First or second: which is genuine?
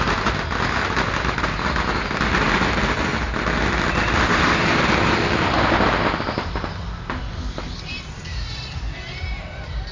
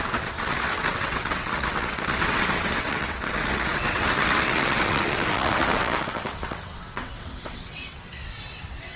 first